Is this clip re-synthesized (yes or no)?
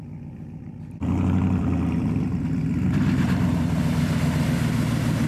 yes